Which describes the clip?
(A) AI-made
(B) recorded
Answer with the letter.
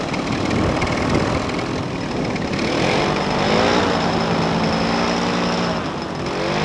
B